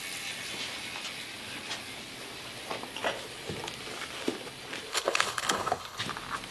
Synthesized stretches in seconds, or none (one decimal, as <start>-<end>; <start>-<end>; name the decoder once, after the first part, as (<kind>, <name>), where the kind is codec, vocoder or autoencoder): 4.9-6.0 (codec, HILCodec)